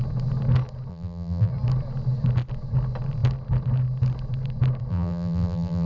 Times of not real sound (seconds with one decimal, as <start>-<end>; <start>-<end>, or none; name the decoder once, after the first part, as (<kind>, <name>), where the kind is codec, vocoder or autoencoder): 0.9-1.5 (vocoder, BigVGAN v2); 4.9-5.9